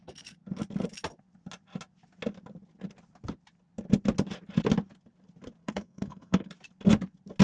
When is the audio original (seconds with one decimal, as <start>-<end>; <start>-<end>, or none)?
0.0-5.6; 6.5-7.4

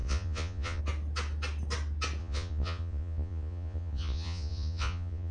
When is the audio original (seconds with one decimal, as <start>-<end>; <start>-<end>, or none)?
0.8-2.2

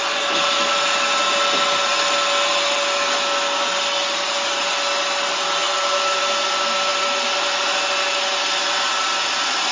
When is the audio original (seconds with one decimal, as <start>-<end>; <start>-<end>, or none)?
0.0-5.6; 6.2-9.7

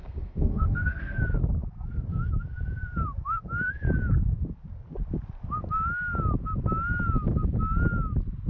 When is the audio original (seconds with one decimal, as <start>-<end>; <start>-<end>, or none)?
1.2-8.5

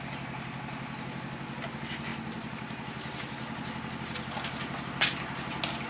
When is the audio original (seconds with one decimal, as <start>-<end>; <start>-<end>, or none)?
0.0-5.9

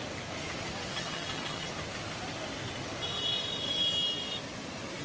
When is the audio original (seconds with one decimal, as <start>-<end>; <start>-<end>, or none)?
0.0-0.9; 1.7-5.0